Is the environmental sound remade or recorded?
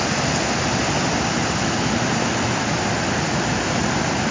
recorded